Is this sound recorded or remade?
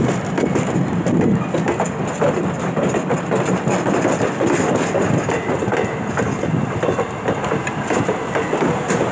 recorded